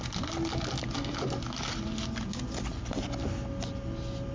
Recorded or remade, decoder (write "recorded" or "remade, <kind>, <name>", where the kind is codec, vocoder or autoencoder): recorded